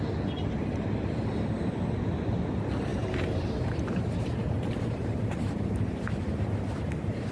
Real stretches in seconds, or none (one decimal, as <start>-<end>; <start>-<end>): 0.0-2.9; 6.2-7.3